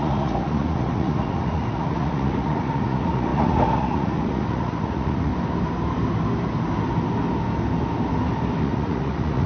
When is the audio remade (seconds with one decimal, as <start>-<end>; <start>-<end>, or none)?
0.0-5.3; 8.6-9.5